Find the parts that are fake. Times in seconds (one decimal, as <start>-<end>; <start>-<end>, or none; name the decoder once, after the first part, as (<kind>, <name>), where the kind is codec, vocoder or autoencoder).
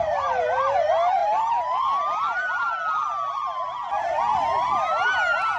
none